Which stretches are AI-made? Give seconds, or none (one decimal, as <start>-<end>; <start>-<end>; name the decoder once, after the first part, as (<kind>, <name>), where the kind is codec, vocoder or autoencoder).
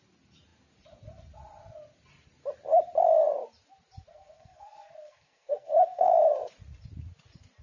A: 4.1-6.1 (codec, SNAC)